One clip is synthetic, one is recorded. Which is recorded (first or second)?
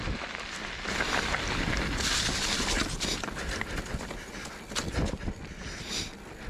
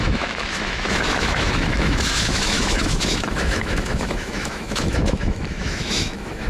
first